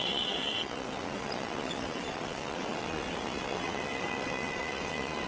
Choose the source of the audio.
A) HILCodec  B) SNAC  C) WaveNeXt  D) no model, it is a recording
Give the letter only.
C